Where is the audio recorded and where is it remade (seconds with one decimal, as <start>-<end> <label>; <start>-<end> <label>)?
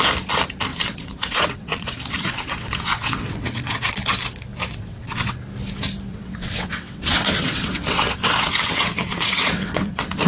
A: 0.0-0.7 recorded; 0.7-3.9 remade; 3.9-4.6 recorded; 4.6-5.3 remade; 5.3-6.1 recorded; 6.1-10.3 remade